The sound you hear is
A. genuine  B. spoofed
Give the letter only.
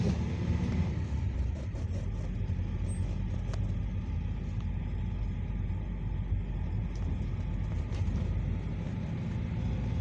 A